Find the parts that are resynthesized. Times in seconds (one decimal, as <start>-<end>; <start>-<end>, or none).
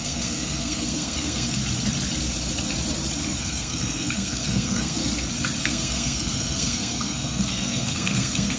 0.0-1.6; 3.4-5.0; 5.6-8.6